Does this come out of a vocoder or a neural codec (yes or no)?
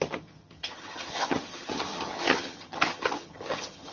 yes